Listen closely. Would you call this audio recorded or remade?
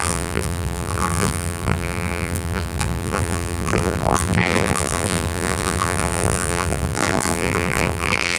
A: remade